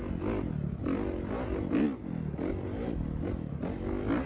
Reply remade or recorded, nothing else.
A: recorded